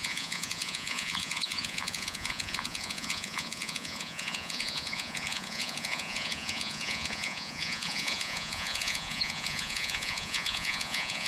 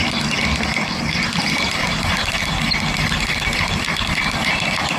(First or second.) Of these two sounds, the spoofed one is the first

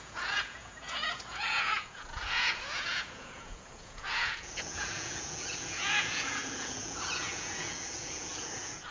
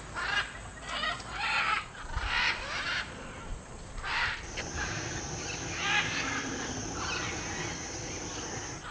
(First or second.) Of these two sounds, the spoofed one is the first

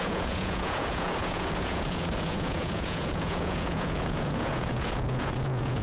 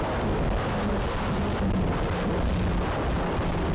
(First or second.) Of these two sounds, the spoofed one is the first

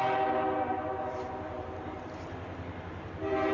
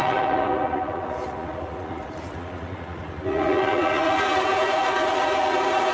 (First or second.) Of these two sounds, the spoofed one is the second